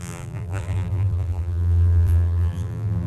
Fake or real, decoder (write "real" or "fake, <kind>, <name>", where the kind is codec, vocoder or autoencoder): fake, vocoder, BigVGAN v2